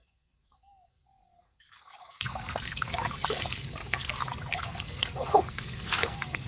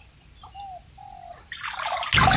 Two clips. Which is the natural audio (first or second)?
second